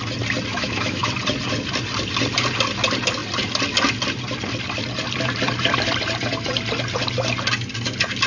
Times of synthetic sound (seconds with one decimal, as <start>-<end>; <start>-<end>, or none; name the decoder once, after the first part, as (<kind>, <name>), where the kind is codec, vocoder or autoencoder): 0.5-1.1 (autoencoder, DAC-VAE)